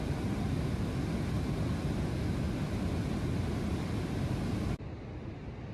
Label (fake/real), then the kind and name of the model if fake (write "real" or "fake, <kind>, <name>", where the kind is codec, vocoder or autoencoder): real